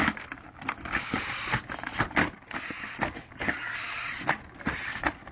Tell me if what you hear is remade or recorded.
recorded